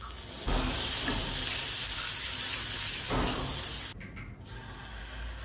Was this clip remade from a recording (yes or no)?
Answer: no